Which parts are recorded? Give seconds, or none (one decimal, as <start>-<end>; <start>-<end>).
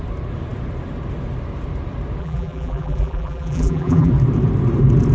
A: 0.0-2.2; 4.1-5.1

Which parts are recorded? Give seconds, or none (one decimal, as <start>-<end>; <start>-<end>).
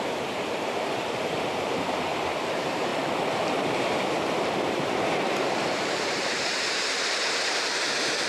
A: 2.9-4.4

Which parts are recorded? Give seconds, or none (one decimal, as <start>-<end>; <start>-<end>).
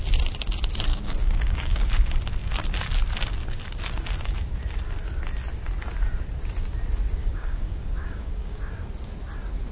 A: 0.0-0.9; 1.9-7.2; 8.6-9.7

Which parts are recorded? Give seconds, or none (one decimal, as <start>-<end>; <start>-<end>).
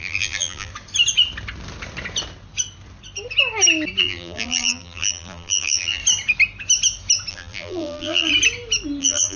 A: 0.7-4.0; 6.0-7.3; 8.3-9.0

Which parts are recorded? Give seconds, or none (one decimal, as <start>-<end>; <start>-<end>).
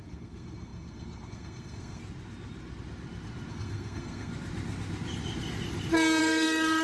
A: 2.0-3.5; 4.3-6.2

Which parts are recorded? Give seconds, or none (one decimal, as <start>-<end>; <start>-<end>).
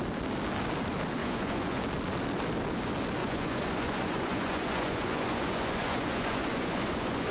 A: 0.0-1.2; 1.8-3.2